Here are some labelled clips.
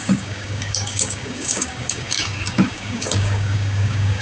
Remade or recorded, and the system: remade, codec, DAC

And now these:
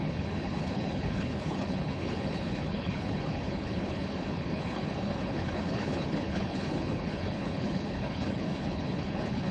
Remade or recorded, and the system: remade, codec, HILCodec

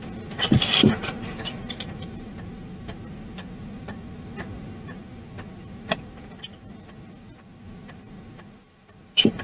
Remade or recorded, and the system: recorded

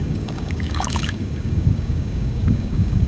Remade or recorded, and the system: remade, codec, DAC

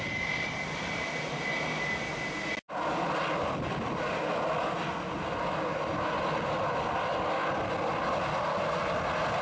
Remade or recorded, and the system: recorded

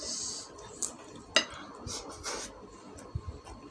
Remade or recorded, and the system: recorded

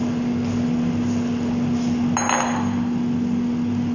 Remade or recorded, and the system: recorded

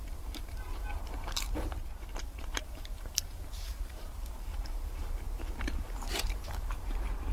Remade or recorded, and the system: remade, vocoder, BigVGAN v2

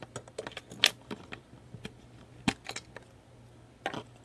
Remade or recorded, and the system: recorded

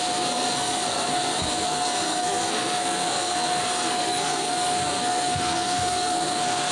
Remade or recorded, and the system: remade, codec, SNAC